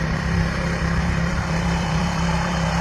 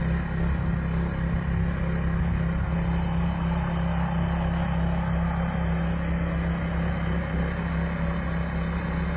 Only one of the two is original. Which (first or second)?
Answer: second